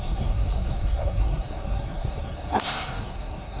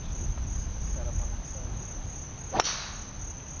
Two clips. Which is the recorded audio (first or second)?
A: second